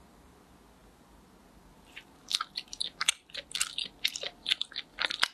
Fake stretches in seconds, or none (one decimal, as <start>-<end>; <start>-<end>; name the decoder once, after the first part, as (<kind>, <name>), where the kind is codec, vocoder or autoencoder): none